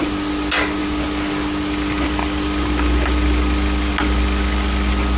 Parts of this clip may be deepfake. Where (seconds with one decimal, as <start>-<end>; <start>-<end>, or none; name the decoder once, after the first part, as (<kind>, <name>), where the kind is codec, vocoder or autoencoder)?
none